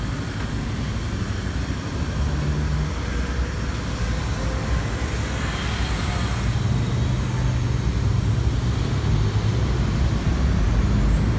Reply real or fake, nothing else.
real